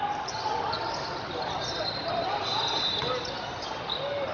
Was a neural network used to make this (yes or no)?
no